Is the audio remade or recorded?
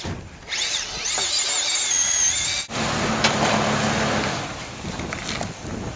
recorded